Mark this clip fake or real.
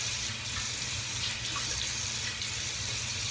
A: real